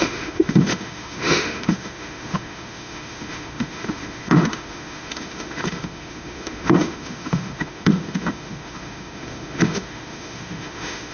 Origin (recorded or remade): remade